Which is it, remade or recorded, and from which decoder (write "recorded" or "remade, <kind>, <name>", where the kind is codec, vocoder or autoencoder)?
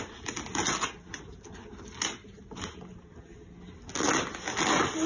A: recorded